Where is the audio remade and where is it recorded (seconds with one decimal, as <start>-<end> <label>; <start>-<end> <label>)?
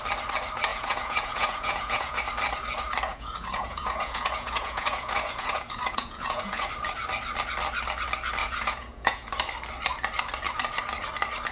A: 0.0-0.7 recorded; 0.7-2.2 remade; 2.2-3.1 recorded; 3.1-6.7 remade; 6.7-8.4 recorded; 8.4-9.3 remade; 9.3-11.5 recorded